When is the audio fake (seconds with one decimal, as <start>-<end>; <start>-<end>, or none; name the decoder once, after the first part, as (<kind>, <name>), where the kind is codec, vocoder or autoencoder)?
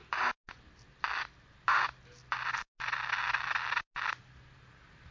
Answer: none